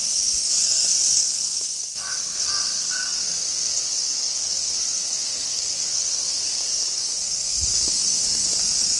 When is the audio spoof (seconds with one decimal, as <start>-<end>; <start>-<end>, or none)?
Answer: 0.0-9.0